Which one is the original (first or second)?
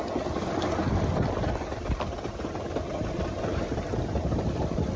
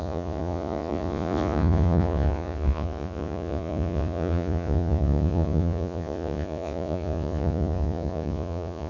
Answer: first